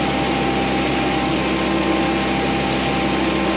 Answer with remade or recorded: recorded